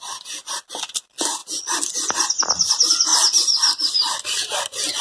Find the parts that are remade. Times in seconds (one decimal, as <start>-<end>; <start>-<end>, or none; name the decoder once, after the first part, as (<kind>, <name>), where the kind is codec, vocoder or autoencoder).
none